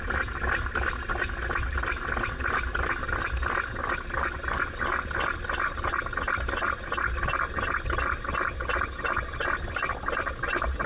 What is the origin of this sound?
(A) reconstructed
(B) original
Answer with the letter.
B